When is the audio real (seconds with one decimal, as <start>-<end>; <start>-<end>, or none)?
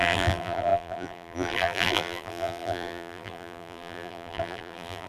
none